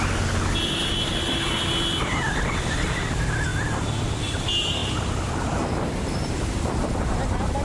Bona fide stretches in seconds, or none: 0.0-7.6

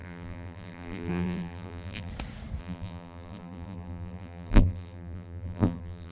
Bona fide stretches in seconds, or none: 2.1-2.6

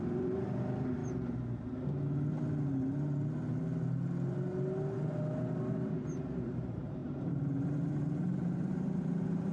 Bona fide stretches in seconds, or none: 1.0-5.6

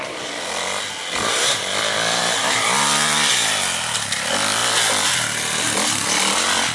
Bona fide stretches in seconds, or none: 0.0-1.3; 2.2-6.7

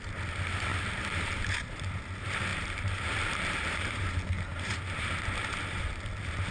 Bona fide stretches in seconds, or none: 0.0-0.7; 2.0-2.5; 4.1-4.5; 5.8-6.5